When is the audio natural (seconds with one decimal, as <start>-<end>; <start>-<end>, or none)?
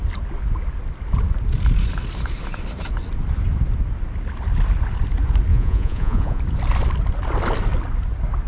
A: 0.0-5.5; 6.4-8.5